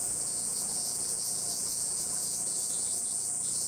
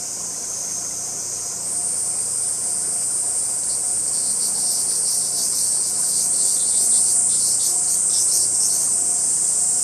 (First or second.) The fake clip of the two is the first